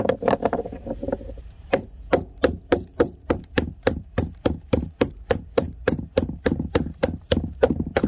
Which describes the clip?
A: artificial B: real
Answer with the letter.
A